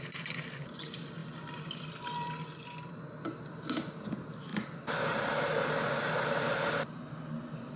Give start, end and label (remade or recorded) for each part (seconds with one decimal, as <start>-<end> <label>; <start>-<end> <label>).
0.0-7.8 recorded

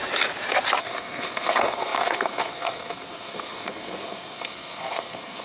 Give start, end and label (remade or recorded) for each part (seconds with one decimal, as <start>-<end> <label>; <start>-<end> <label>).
0.0-0.8 recorded; 0.8-5.4 remade

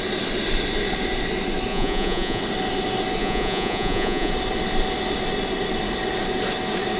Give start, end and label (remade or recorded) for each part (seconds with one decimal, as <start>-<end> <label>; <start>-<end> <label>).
0.0-1.7 recorded; 1.7-2.4 remade; 2.4-3.2 recorded; 3.2-4.3 remade; 4.3-7.0 recorded